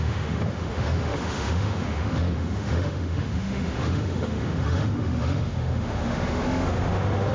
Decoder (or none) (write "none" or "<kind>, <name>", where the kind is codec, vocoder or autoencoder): autoencoder, DAC-VAE